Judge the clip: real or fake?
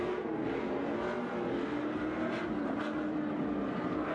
real